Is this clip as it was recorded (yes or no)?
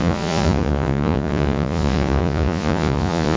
no